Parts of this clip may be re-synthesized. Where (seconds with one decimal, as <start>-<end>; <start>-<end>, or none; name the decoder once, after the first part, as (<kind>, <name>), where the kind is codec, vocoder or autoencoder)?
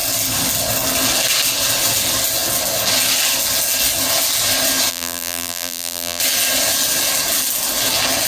4.9-6.2 (vocoder, BigVGAN v2)